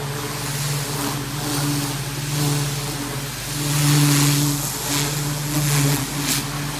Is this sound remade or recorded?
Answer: recorded